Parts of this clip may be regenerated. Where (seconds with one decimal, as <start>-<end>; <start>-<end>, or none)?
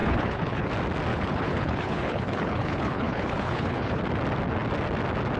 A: 0.0-0.7; 1.1-4.0